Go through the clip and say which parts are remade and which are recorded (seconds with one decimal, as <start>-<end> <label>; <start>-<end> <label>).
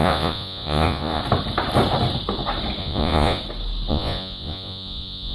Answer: 0.0-1.2 remade; 1.2-2.8 recorded; 2.8-3.4 remade; 3.4-3.9 recorded; 3.9-5.3 remade